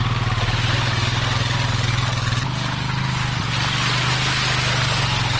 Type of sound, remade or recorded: recorded